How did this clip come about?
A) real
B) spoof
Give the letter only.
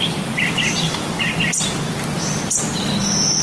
A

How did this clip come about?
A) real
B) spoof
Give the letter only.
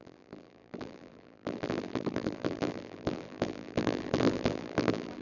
B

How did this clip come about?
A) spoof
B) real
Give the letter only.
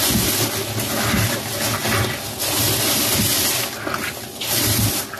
B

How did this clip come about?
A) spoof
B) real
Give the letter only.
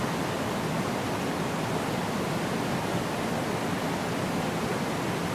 B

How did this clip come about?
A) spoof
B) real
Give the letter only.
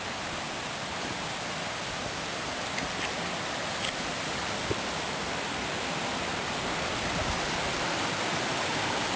B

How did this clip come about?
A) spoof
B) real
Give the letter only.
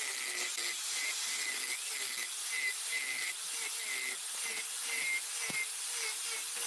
B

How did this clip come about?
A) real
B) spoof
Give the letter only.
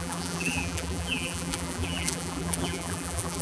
B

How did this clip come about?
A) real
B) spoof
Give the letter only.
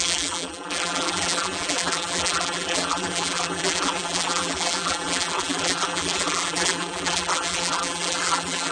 B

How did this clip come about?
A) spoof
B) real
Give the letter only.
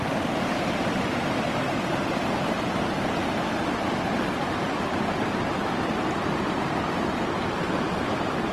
A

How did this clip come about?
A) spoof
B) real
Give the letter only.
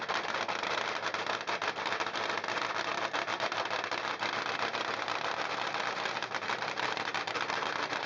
A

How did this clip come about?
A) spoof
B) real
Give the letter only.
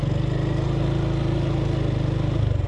B